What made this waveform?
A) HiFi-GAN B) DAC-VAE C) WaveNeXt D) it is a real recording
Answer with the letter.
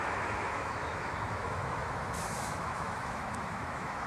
B